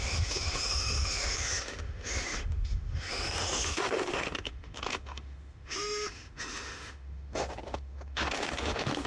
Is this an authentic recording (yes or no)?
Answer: no